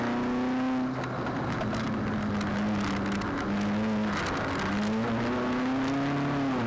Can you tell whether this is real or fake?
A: real